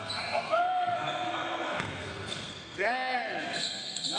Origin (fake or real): fake